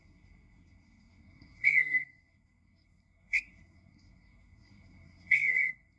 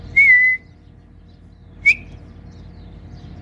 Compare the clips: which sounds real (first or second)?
second